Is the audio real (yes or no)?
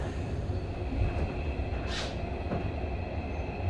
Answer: yes